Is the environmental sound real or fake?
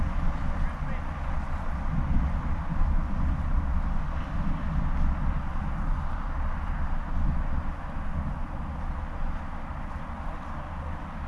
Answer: real